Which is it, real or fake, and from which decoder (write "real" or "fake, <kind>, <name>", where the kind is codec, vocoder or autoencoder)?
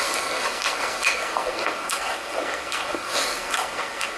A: fake, codec, SNAC